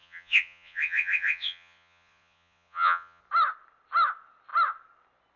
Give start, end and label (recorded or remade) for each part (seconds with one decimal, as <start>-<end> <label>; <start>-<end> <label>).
0.0-3.2 remade; 3.2-5.4 recorded